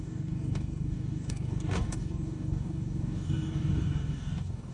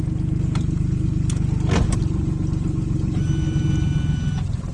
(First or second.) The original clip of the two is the second